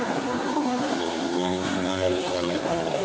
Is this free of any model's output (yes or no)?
no